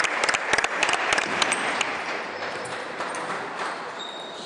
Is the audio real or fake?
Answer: fake